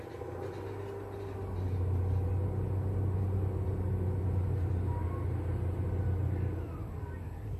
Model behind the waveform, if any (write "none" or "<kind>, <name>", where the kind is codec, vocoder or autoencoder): none